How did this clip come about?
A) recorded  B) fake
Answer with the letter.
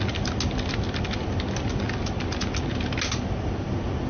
A